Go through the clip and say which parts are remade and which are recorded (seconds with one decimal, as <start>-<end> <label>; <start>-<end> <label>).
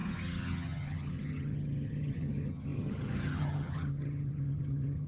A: 0.0-5.1 remade